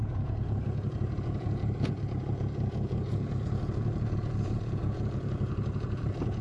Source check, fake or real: fake